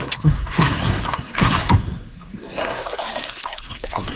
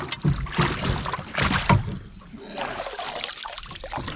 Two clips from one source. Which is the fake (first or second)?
first